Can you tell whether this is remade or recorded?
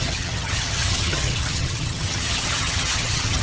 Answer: remade